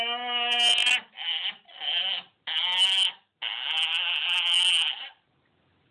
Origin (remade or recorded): recorded